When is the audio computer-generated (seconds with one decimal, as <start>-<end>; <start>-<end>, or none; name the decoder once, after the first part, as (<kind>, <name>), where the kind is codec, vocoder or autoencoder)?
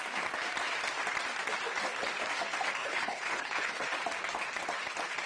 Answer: 2.8-3.8 (codec, HILCodec)